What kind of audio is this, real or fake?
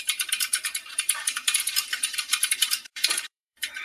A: fake